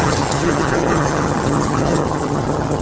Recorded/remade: remade